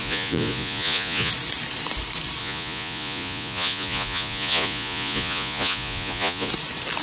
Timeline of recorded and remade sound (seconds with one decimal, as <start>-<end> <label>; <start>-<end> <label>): 0.0-1.3 remade; 1.3-2.4 recorded; 2.4-6.5 remade; 6.5-7.0 recorded

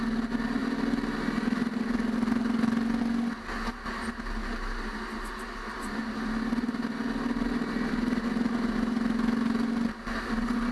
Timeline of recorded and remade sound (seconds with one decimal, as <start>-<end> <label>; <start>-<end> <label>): 0.0-10.7 recorded

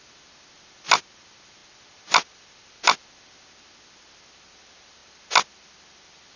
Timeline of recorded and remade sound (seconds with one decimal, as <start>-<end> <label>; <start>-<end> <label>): 0.0-6.4 recorded